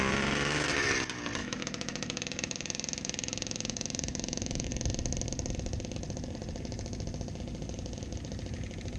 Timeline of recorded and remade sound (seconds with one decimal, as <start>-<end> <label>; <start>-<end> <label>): 0.0-1.4 recorded; 1.4-4.7 remade; 4.7-9.0 recorded